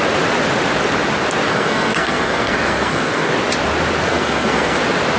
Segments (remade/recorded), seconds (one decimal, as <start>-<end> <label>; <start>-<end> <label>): 0.0-1.5 recorded; 1.5-3.3 remade; 3.3-4.1 recorded; 4.1-4.8 remade; 4.8-5.2 recorded